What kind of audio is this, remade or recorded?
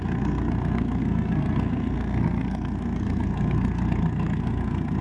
remade